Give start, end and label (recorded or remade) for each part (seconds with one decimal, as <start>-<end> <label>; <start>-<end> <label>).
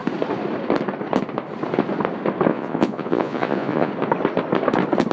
0.0-2.5 recorded; 2.5-3.9 remade; 3.9-5.1 recorded